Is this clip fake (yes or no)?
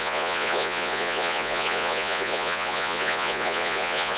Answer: yes